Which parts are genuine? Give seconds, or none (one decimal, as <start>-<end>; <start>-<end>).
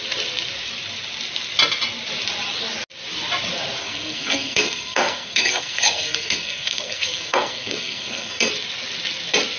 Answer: 0.0-3.8; 8.5-9.6